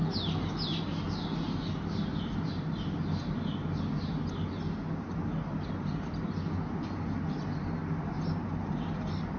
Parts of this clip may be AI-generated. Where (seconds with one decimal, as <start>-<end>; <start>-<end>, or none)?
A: none